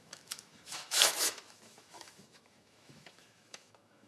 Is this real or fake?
fake